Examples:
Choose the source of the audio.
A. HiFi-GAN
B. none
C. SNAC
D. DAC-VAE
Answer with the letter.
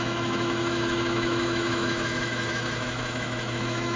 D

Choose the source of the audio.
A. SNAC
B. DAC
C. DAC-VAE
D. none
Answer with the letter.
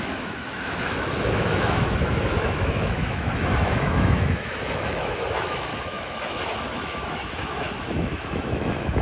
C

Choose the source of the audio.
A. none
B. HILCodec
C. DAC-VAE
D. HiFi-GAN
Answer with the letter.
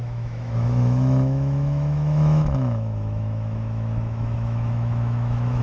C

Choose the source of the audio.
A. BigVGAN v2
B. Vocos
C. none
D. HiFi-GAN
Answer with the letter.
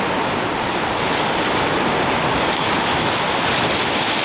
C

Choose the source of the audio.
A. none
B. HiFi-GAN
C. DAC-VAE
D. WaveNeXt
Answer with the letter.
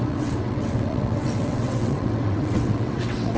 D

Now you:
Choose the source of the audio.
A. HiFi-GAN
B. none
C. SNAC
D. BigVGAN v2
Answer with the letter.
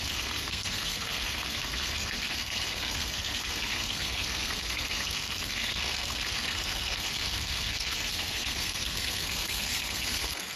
C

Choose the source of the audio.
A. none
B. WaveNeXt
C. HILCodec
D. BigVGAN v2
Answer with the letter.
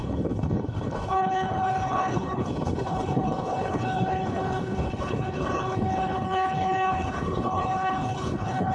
C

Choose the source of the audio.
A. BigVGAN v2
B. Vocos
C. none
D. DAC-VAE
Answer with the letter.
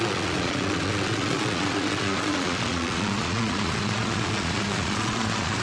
B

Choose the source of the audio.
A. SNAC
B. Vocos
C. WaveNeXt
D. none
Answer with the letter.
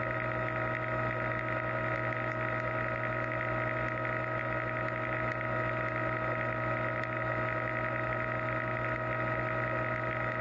D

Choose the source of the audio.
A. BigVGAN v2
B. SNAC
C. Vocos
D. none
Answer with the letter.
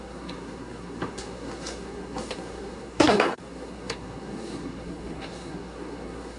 B